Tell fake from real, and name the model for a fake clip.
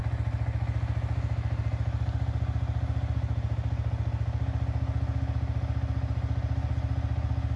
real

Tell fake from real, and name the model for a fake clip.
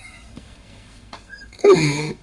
fake, codec, SNAC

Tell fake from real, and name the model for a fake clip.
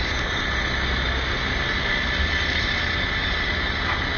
real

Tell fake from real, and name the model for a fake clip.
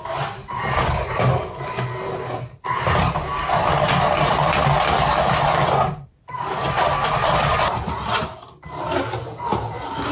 real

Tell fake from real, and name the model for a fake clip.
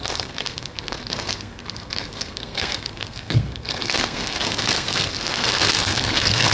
fake, codec, SNAC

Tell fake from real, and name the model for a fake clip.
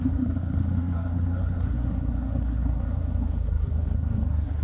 fake, codec, SNAC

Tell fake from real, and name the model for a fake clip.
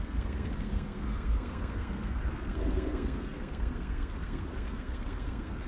fake, codec, SNAC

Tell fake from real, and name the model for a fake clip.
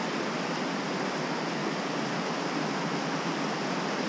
real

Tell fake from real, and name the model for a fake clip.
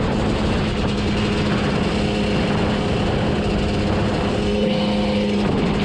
real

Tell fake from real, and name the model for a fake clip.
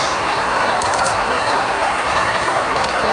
fake, codec, SNAC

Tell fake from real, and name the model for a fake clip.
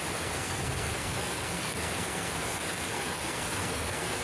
fake, codec, SNAC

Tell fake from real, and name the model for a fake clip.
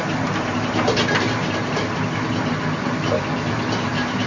real